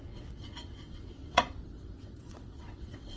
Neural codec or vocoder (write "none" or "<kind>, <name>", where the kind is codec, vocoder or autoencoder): vocoder, WaveNeXt